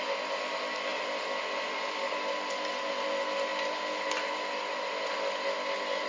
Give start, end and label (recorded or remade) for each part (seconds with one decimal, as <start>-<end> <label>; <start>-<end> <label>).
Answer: 0.0-6.1 recorded